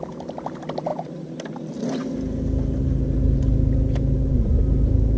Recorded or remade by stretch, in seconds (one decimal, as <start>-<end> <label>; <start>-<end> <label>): 0.0-5.2 recorded